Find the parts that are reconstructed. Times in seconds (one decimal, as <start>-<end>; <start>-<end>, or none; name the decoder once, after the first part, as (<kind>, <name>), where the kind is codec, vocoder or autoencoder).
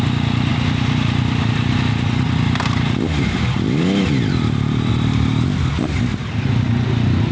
none